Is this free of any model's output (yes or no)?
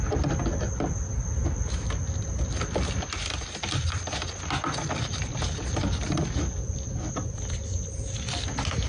yes